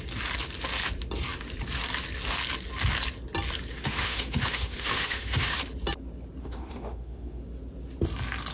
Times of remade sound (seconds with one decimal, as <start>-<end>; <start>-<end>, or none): 3.7-5.6; 6.4-7.4